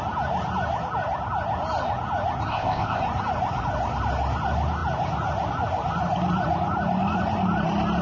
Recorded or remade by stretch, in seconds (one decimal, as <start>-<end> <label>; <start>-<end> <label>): 0.0-2.5 recorded; 2.5-3.0 remade; 3.0-8.0 recorded